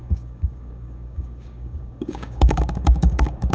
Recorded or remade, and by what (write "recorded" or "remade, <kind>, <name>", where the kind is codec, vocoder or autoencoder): remade, codec, DAC